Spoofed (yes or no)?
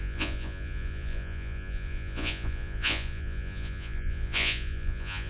yes